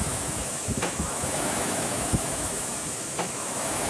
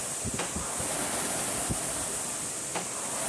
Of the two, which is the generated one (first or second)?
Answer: first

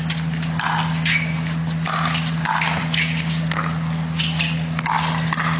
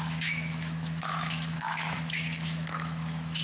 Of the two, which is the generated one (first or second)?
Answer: second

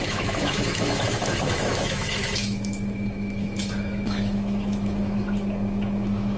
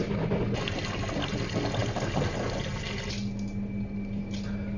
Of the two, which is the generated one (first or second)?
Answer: first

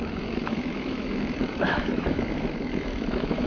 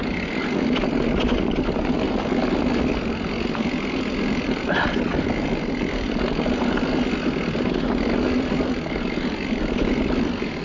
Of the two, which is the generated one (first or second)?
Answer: first